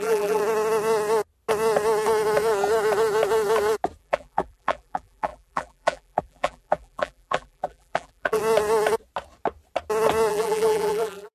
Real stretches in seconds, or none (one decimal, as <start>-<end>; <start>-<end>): 0.4-4.0; 8.4-10.3